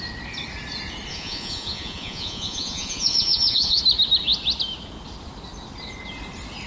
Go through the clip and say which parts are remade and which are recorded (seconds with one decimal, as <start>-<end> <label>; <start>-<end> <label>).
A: 0.0-1.1 recorded; 1.1-3.8 remade; 3.8-6.7 recorded